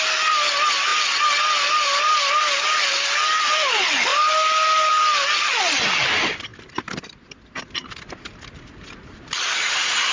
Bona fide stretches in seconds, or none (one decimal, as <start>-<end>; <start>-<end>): 0.0-10.1